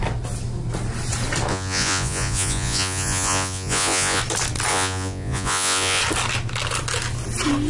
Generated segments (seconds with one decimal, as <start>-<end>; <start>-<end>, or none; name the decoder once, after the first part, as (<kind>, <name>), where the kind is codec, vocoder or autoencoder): 1.5-4.2 (vocoder, Vocos); 4.7-6.0